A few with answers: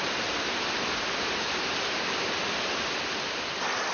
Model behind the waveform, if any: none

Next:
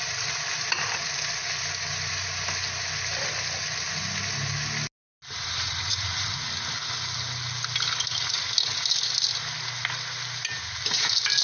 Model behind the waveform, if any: none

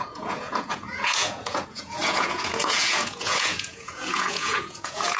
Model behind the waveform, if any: vocoder, Vocos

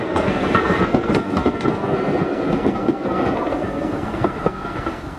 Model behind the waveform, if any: codec, SNAC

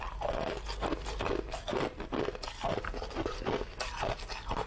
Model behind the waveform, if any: none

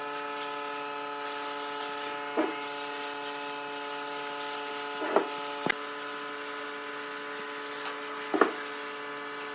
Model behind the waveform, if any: none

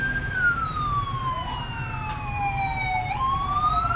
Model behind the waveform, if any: none